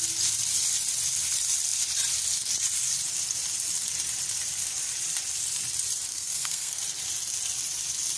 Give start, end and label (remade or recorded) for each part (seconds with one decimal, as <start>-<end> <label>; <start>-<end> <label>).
0.0-6.1 recorded; 6.1-6.8 remade; 6.8-8.2 recorded